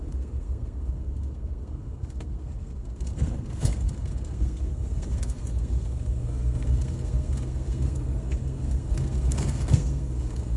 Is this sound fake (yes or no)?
yes